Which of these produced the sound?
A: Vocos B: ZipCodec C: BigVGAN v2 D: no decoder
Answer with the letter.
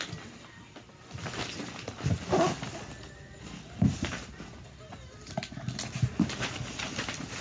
D